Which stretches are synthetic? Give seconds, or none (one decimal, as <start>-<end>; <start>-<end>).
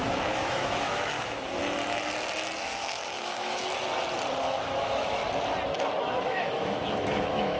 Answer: 0.0-1.6; 2.6-3.6; 4.4-5.2; 6.0-7.6